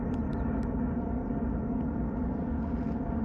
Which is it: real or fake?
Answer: real